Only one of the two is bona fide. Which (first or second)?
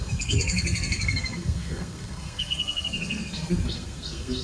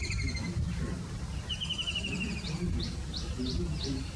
second